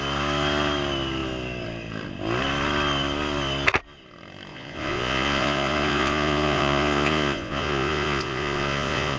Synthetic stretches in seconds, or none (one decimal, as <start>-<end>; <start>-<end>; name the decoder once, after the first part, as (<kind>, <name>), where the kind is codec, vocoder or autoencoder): 4.5-9.2 (vocoder, Vocos)